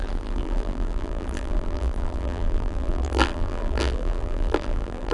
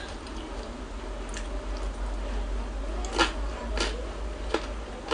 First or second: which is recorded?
second